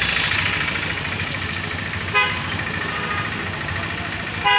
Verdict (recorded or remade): recorded